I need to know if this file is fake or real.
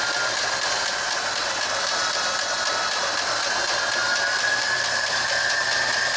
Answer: fake